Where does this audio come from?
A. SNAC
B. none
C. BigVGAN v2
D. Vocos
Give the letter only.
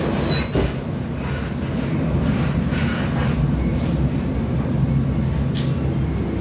B